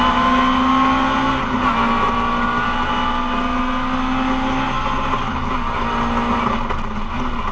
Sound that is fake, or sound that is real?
real